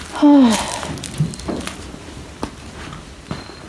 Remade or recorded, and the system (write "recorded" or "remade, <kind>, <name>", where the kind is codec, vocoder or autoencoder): recorded